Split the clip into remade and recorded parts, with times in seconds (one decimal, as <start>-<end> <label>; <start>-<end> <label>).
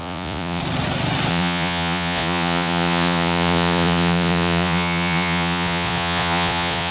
0.0-0.6 remade; 0.6-1.3 recorded; 1.3-6.9 remade